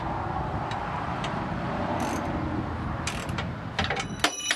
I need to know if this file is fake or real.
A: real